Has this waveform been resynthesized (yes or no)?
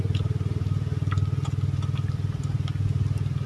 no